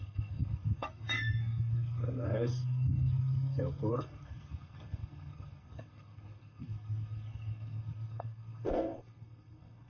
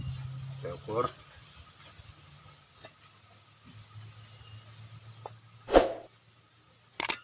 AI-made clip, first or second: first